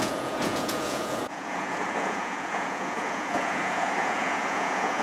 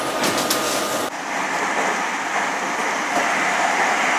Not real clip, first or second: first